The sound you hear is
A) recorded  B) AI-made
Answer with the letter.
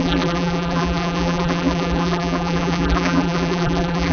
B